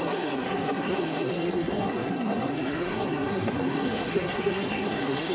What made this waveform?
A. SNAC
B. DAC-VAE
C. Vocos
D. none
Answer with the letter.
A